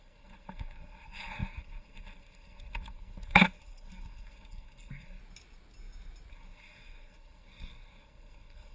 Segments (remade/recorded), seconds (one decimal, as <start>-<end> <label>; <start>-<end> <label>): 0.0-5.2 remade; 5.2-6.3 recorded; 6.3-8.7 remade